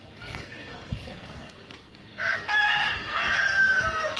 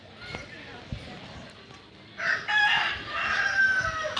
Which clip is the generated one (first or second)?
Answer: first